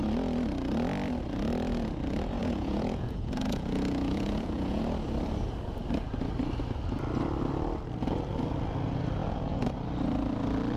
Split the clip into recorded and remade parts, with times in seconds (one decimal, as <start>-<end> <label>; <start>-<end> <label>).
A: 0.0-2.4 recorded; 2.4-4.8 remade; 4.8-9.2 recorded; 9.2-9.7 remade; 9.7-10.8 recorded

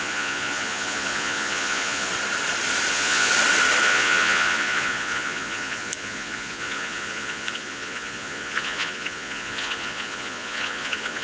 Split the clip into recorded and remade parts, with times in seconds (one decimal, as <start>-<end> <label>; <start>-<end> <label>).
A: 0.0-2.1 remade; 2.1-2.9 recorded; 2.9-3.3 remade; 3.3-3.8 recorded; 3.8-11.2 remade

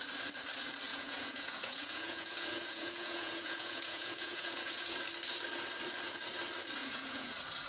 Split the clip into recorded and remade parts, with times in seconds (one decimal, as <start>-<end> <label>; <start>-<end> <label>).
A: 0.0-0.9 recorded; 0.9-5.0 remade; 5.0-6.8 recorded; 6.8-7.3 remade; 7.3-7.7 recorded

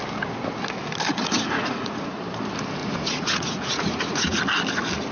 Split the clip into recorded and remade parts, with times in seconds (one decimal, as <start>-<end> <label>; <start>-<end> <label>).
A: 0.0-1.1 recorded; 1.1-2.2 remade; 2.2-2.8 recorded; 2.8-4.4 remade; 4.4-5.1 recorded

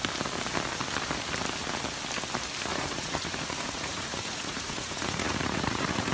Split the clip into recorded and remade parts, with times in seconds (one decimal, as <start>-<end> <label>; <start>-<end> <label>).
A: 0.0-2.7 recorded; 2.7-6.1 remade

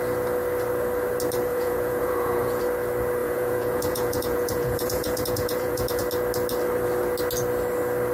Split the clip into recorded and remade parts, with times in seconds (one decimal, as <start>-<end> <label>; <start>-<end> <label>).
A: 0.0-1.5 recorded; 1.5-2.6 remade; 2.6-3.2 recorded; 3.2-6.0 remade; 6.0-8.1 recorded

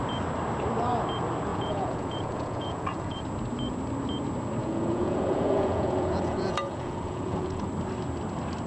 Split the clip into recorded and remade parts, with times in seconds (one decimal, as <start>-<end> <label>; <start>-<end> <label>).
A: 0.0-1.5 recorded; 1.5-3.2 remade; 3.2-4.6 recorded; 4.6-7.7 remade; 7.7-8.7 recorded

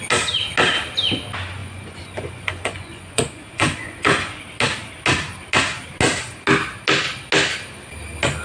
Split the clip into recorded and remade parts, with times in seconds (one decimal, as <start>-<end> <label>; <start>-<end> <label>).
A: 0.0-1.6 recorded; 1.6-4.4 remade; 4.4-8.4 recorded